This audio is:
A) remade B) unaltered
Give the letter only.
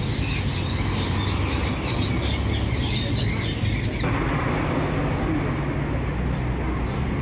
B